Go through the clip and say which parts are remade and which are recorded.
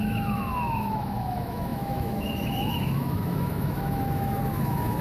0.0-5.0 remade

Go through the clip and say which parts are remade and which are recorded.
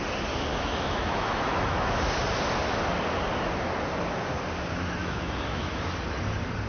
0.0-0.5 recorded; 0.5-2.0 remade; 2.0-5.0 recorded; 5.0-5.8 remade; 5.8-6.7 recorded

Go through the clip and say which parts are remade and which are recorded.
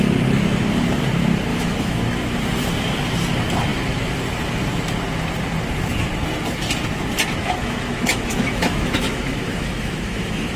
0.0-1.5 recorded; 1.5-2.0 remade; 2.0-7.4 recorded; 7.4-10.6 remade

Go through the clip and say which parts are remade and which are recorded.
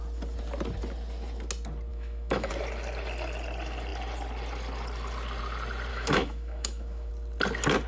0.0-1.9 recorded; 1.9-2.5 remade; 2.5-5.9 recorded; 5.9-7.1 remade; 7.1-7.9 recorded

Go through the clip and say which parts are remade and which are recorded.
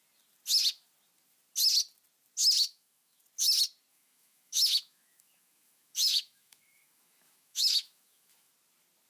0.0-2.6 recorded; 2.6-3.2 remade; 3.2-3.9 recorded; 3.9-8.5 remade; 8.5-9.1 recorded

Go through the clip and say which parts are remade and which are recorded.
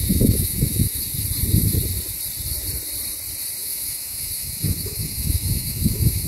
0.0-1.0 remade; 1.0-3.6 recorded; 3.6-6.3 remade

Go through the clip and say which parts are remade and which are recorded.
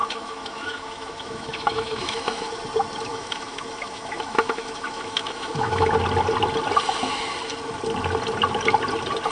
0.0-2.6 remade; 2.6-3.1 recorded; 3.1-5.9 remade; 5.9-9.3 recorded